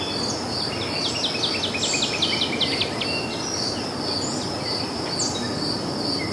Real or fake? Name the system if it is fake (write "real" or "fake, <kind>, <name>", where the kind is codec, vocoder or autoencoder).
real